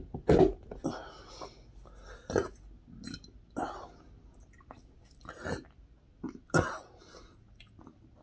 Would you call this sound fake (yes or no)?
no